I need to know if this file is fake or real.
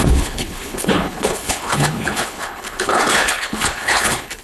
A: fake